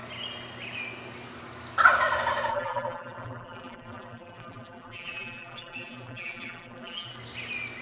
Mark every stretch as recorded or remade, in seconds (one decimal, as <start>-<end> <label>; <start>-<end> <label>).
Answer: 0.0-2.5 recorded; 2.5-7.2 remade; 7.2-7.8 recorded